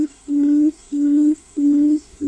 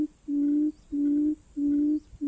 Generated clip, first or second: first